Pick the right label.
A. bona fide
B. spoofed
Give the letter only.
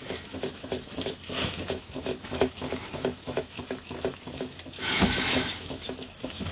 B